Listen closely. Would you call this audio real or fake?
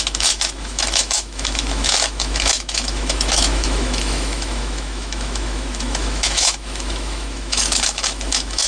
fake